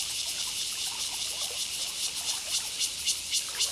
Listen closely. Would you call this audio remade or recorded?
recorded